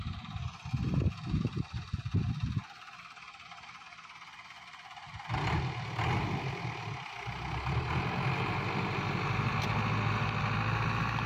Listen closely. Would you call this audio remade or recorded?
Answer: recorded